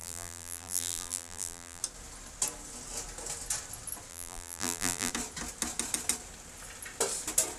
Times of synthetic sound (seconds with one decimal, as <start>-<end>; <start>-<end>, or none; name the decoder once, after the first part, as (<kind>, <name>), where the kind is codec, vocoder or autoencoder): 0.0-1.8 (vocoder, BigVGAN v2); 4.1-5.1